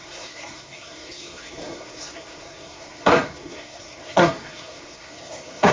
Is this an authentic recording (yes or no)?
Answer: no